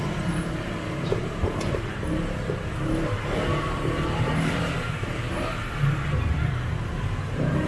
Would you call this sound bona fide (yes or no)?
no